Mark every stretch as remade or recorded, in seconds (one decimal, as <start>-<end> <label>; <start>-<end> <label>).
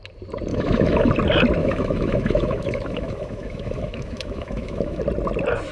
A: 0.0-0.5 recorded; 0.5-1.1 remade; 1.1-1.6 recorded; 1.6-5.0 remade; 5.0-5.7 recorded